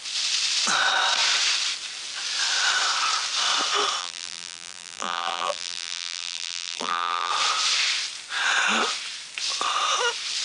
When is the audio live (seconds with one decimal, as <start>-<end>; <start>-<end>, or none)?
0.0-4.0; 7.3-10.4